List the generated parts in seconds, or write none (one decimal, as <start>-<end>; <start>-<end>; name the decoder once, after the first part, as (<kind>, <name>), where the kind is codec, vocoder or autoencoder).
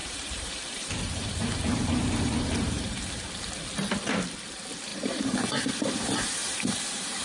0.0-3.6 (vocoder, BigVGAN v2); 4.9-5.5; 6.4-7.2